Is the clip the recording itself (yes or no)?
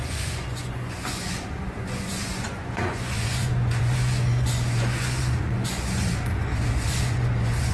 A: no